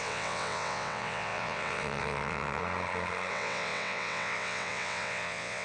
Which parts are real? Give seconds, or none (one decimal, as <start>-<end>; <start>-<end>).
2.6-3.3